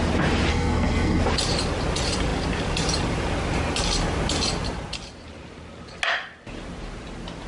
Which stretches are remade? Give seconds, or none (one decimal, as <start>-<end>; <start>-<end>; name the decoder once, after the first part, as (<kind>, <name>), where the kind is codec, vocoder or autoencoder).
0.5-1.2 (codec, SNAC)